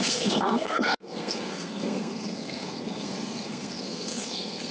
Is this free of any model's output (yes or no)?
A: no